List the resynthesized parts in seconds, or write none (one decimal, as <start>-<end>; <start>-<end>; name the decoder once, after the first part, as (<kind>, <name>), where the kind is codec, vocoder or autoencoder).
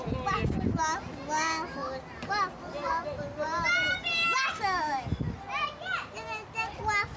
none